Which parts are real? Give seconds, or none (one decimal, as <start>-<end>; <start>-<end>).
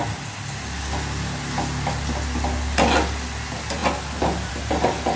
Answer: 0.0-5.2